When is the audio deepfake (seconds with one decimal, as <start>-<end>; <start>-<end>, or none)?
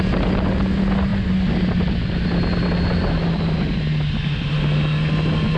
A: none